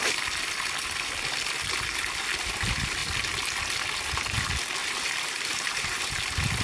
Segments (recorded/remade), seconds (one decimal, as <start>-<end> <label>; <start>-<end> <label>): 0.0-4.8 recorded; 4.8-6.0 remade; 6.0-6.6 recorded